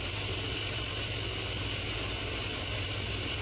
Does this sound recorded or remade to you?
recorded